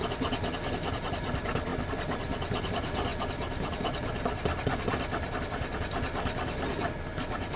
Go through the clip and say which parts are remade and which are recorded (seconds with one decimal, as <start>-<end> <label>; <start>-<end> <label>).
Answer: 0.0-7.6 recorded